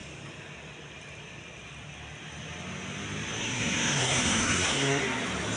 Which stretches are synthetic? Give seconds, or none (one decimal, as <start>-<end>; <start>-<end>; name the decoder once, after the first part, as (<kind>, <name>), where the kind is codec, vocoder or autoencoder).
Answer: 3.4-5.0 (codec, SNAC)

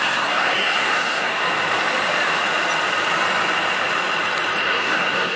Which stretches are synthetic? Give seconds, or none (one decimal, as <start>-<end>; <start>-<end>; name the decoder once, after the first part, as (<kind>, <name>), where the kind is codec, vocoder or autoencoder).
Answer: 0.0-1.4 (codec, SNAC); 4.6-5.4

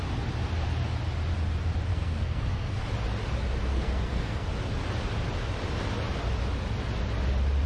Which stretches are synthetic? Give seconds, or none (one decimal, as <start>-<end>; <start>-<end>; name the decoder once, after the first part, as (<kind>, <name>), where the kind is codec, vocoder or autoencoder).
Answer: 1.9-2.8 (codec, SNAC); 3.7-4.5

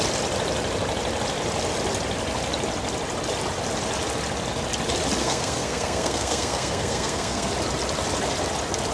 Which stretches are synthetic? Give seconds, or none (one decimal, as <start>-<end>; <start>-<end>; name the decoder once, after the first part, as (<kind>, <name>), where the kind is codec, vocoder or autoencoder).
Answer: 5.2-7.5 (codec, SNAC)

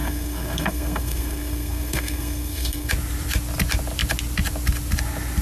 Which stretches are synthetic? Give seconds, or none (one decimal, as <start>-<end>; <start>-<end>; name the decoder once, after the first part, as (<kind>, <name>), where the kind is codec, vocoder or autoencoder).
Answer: 0.0-2.9 (codec, SNAC)

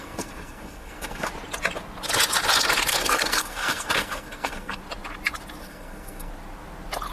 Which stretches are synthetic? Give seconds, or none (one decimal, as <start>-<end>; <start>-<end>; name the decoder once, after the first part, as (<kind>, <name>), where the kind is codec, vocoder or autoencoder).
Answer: 0.0-1.3 (codec, SNAC); 2.9-4.8; 5.6-6.3

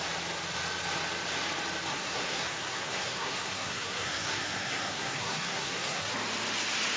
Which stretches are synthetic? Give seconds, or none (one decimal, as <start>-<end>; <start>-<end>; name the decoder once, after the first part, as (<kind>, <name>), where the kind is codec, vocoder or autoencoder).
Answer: 1.9-6.1 (codec, SNAC)

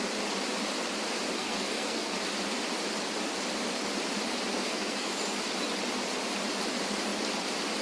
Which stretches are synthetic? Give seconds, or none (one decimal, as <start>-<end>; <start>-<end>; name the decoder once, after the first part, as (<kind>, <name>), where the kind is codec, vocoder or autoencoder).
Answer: 1.4-2.2 (codec, SNAC); 4.5-5.1